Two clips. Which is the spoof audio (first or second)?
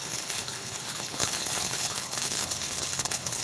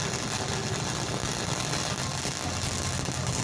first